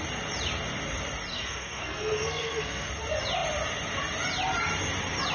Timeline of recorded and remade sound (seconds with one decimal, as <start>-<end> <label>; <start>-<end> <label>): 0.0-1.3 recorded; 1.3-2.9 remade; 2.9-5.3 recorded